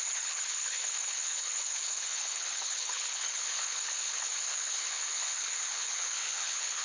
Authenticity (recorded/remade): remade